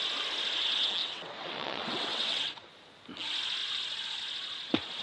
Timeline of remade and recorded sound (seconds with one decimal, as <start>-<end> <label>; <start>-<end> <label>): 0.0-1.0 recorded; 1.0-2.7 remade; 2.7-5.0 recorded